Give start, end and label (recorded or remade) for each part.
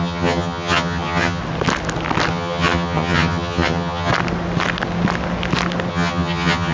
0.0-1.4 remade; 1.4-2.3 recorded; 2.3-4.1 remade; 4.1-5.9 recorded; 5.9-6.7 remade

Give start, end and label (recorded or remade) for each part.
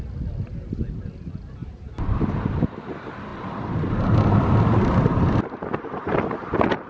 0.0-1.6 recorded; 1.6-2.3 remade; 2.3-6.9 recorded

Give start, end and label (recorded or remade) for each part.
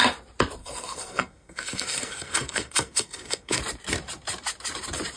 0.0-0.6 recorded; 0.6-3.6 remade; 3.6-5.2 recorded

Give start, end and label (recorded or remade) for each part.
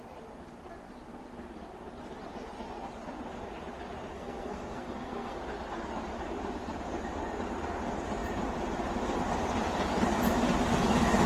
0.0-4.1 recorded; 4.1-5.4 remade; 5.4-11.3 recorded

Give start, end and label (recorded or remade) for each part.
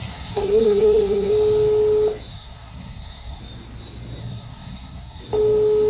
0.0-1.3 remade; 1.3-2.3 recorded; 2.3-3.4 remade; 3.4-4.2 recorded; 4.2-5.2 remade; 5.2-5.9 recorded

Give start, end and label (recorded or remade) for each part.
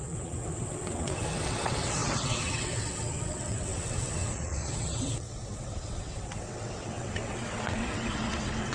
0.0-8.7 remade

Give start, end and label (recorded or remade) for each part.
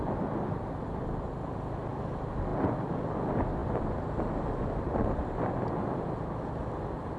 0.0-7.2 recorded